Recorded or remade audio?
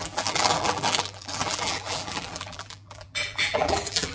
remade